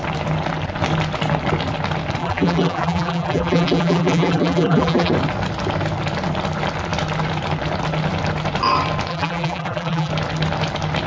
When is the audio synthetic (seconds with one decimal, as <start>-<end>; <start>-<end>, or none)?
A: 2.2-5.1; 9.1-10.1